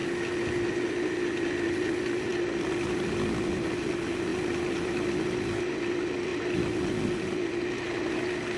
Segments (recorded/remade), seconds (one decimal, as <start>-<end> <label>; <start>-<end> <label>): 0.0-2.3 recorded; 2.3-3.1 remade; 3.1-4.3 recorded; 4.3-5.1 remade; 5.1-6.3 recorded; 6.3-7.4 remade; 7.4-8.6 recorded

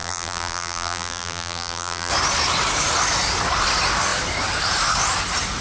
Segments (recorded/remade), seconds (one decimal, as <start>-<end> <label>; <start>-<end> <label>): 0.0-2.1 remade; 2.1-5.6 recorded

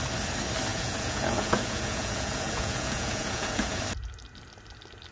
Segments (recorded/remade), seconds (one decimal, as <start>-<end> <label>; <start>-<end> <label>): 0.0-0.7 recorded; 0.7-3.8 remade; 3.8-5.1 recorded

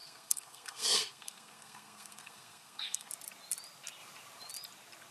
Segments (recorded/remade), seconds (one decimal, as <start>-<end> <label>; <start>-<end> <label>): 0.0-3.1 remade; 3.1-5.1 recorded

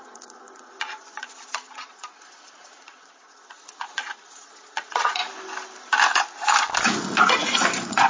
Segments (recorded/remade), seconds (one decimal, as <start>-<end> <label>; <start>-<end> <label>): 0.0-5.2 remade; 5.2-7.2 recorded; 7.2-8.1 remade

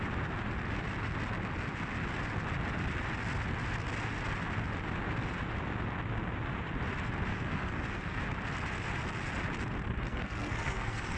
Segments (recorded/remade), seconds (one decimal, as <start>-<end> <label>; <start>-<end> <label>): 0.0-7.3 recorded; 7.3-8.2 remade; 8.2-10.1 recorded; 10.1-11.2 remade